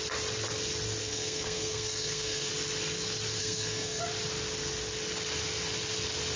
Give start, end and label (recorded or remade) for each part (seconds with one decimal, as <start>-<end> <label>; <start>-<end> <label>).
0.0-1.0 recorded; 1.0-2.5 remade; 2.5-3.4 recorded; 3.4-4.0 remade; 4.0-6.4 recorded